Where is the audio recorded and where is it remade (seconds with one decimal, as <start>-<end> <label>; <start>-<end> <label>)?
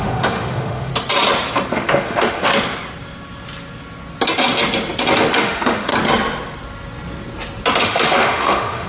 0.0-0.9 remade; 0.9-1.7 recorded; 1.7-2.5 remade; 2.5-5.4 recorded; 5.4-5.9 remade; 5.9-7.8 recorded; 7.8-8.9 remade